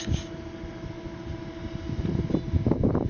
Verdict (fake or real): real